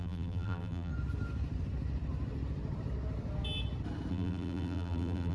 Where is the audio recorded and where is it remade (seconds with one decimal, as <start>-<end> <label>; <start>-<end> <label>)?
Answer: 0.0-0.9 remade; 0.9-4.1 recorded; 4.1-5.3 remade